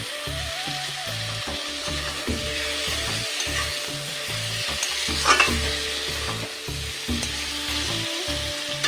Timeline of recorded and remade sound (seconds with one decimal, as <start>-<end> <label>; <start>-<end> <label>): 0.0-1.8 recorded; 1.8-3.2 remade; 3.2-8.9 recorded